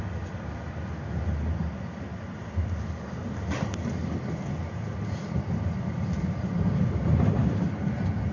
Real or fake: real